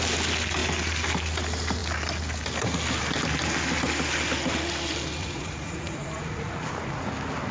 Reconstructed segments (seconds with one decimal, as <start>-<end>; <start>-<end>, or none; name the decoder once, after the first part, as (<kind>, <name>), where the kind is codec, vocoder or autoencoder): 5.2-7.1 (vocoder, Vocos)